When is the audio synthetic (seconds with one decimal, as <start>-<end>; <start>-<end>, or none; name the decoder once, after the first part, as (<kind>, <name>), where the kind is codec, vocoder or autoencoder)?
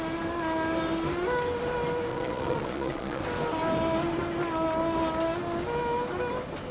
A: 2.1-3.2 (vocoder, Vocos)